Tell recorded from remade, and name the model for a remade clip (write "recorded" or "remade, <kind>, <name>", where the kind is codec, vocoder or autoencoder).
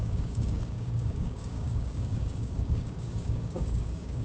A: remade, codec, DAC